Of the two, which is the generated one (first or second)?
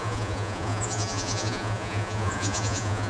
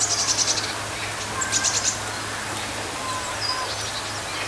first